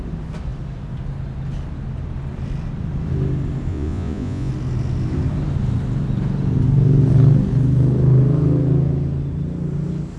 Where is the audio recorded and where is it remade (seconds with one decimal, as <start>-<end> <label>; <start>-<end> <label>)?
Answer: 0.0-3.7 recorded; 3.7-4.5 remade; 4.5-10.2 recorded